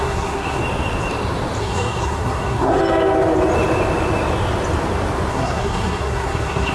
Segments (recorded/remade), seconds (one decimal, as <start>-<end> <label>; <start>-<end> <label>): 0.0-0.6 remade; 0.6-1.6 recorded; 1.6-2.8 remade; 2.8-5.3 recorded; 5.3-6.7 remade